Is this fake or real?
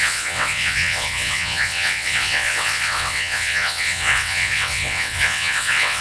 fake